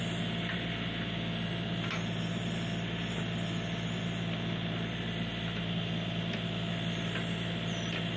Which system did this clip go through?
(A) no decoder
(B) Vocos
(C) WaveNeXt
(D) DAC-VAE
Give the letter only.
A